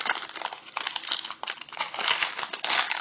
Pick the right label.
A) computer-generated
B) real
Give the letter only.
B